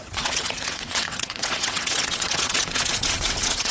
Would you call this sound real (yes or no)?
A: no